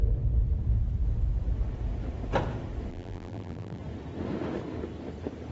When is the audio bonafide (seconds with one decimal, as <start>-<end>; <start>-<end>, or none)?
0.0-2.9; 3.8-5.5